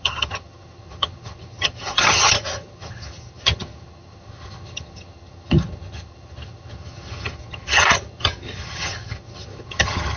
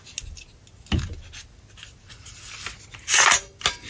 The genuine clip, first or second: second